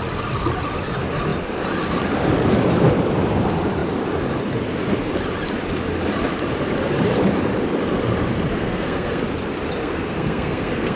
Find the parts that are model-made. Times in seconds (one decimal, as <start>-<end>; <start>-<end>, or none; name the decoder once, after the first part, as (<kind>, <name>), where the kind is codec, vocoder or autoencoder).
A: 8.6-9.2 (codec, SNAC); 9.8-11.0